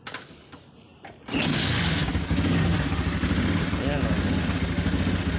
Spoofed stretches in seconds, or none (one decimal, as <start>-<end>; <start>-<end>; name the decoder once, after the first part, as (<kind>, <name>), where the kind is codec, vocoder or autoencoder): none